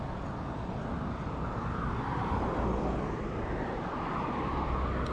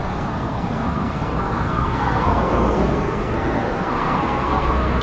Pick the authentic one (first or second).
first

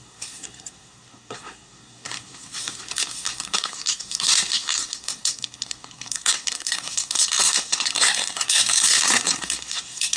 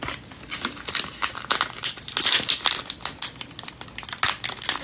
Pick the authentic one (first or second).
second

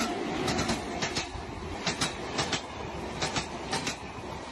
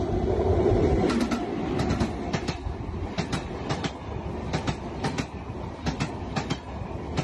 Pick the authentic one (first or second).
first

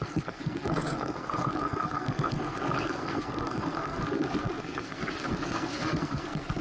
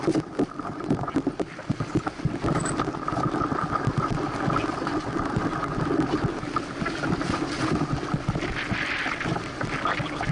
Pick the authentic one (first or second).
second